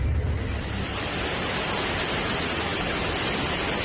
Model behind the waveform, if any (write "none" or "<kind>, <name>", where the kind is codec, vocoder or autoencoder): none